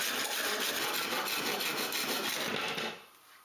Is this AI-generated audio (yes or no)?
no